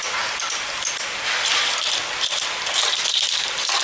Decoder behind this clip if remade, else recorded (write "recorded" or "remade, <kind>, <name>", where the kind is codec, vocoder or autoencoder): recorded